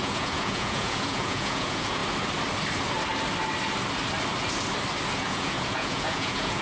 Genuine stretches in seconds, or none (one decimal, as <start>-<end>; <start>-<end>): 2.0-5.1